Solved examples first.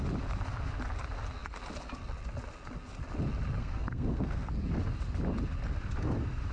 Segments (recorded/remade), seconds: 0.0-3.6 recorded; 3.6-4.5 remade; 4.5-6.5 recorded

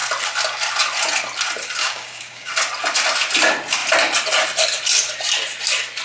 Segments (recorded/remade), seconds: 0.0-1.8 recorded; 1.8-2.5 remade; 2.5-6.0 recorded

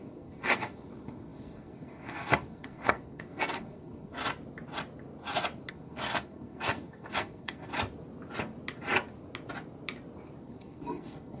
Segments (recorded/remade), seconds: 0.0-4.2 remade; 4.2-5.7 recorded; 5.7-7.7 remade; 7.7-10.4 recorded; 10.4-11.4 remade